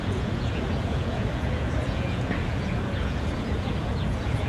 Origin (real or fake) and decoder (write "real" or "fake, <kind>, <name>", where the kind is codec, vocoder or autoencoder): fake, vocoder, Vocos